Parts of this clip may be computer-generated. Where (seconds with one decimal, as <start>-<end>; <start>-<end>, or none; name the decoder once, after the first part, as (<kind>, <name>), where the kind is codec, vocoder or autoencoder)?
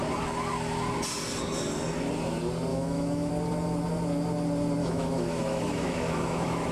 2.7-3.3 (autoencoder, DAC-VAE); 4.8-6.7